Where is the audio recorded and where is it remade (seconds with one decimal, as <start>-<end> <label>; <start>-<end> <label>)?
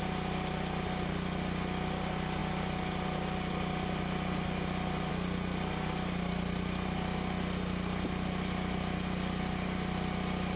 0.0-10.6 recorded